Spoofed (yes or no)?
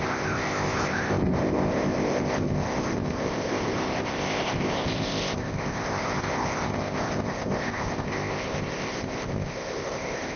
yes